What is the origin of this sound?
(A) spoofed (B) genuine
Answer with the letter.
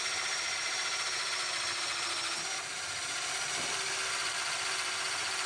B